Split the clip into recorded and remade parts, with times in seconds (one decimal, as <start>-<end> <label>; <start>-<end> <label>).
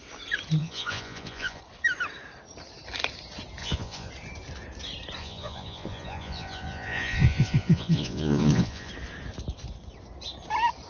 0.0-0.6 recorded; 0.6-1.6 remade; 1.6-3.6 recorded; 3.6-4.1 remade; 4.1-5.2 recorded; 5.2-8.9 remade; 8.9-10.9 recorded